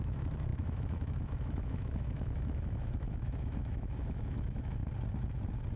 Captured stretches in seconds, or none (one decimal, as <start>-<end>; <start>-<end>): 4.8-5.8

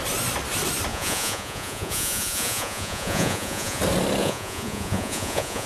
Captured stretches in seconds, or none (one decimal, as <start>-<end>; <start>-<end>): 0.0-0.9; 3.8-4.2

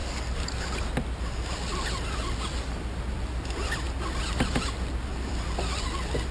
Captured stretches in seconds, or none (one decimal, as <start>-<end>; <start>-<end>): 0.0-6.3

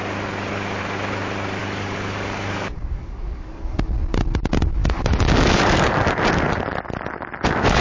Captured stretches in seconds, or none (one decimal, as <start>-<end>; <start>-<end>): 0.0-1.6; 3.8-4.8; 5.9-7.8

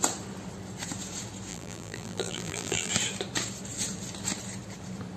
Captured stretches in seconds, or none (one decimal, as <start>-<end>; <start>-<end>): 0.0-1.5; 2.9-5.2

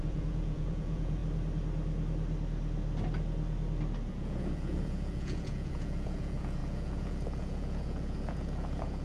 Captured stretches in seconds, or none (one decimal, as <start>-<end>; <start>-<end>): 1.2-4.1

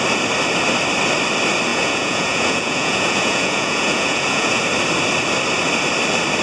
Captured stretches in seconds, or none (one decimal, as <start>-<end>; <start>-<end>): 0.0-1.7; 4.6-6.4

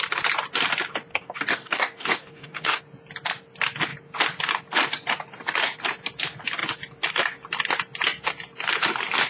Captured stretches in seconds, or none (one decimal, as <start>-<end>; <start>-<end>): 0.0-1.1; 2.8-9.3